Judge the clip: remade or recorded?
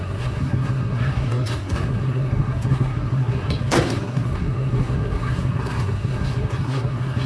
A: remade